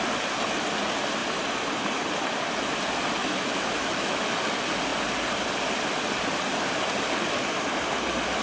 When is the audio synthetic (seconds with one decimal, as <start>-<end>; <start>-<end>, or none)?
3.2-4.3